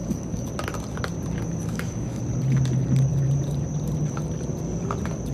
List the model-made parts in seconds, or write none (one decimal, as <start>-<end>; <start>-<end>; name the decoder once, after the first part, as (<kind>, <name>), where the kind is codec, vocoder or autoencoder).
0.0-0.5 (codec, DAC); 1.6-2.2